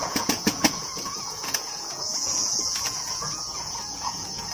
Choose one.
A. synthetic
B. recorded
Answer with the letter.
A